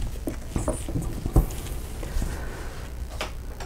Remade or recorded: recorded